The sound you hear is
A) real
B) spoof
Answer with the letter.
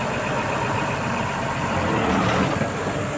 A